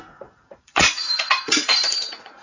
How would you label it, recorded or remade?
remade